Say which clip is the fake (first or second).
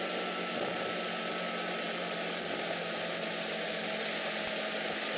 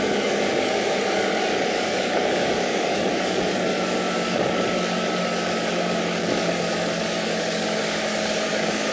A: second